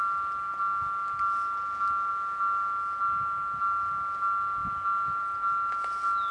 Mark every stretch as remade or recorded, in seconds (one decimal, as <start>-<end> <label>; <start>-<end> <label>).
0.0-6.3 recorded